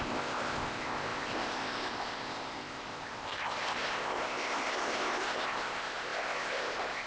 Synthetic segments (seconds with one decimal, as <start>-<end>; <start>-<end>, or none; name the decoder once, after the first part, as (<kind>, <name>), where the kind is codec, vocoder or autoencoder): 0.0-7.1 (codec, ZipCodec)